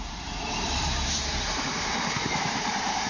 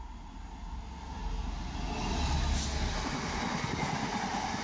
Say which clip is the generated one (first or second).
first